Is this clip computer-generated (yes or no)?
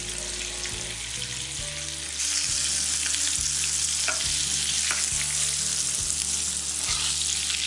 no